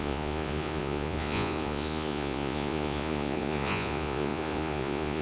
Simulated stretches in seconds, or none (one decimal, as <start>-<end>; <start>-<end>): 0.0-5.2